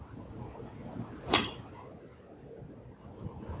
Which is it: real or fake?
real